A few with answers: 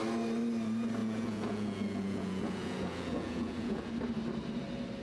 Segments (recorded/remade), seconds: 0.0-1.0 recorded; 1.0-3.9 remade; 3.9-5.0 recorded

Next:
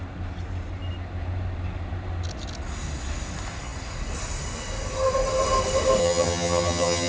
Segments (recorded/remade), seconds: 0.0-6.0 recorded; 6.0-7.1 remade

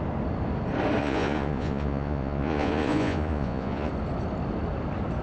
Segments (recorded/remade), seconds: 0.0-1.0 recorded; 1.0-3.9 remade; 3.9-5.2 recorded

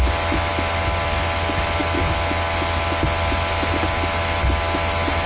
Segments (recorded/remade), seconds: 0.0-5.3 recorded

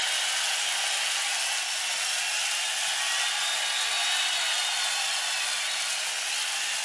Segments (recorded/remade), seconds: 0.0-6.8 recorded

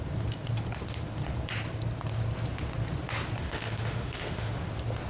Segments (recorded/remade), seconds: 0.0-3.4 recorded; 3.4-4.5 remade; 4.5-5.1 recorded

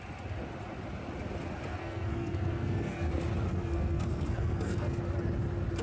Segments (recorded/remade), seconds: 0.0-1.8 recorded; 1.8-3.1 remade; 3.1-3.5 recorded; 3.5-5.0 remade; 5.0-5.8 recorded

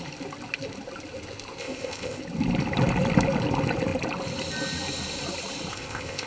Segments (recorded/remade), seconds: 0.0-1.6 recorded; 1.6-2.2 remade; 2.2-5.7 recorded; 5.7-6.3 remade